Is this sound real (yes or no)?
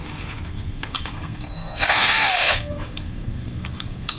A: no